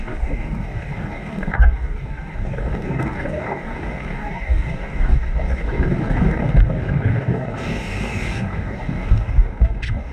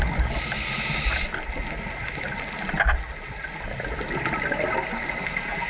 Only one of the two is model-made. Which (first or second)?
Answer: first